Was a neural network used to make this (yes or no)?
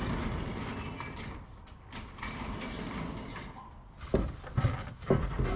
no